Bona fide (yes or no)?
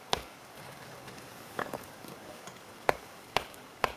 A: no